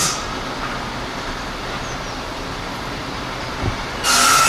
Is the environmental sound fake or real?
real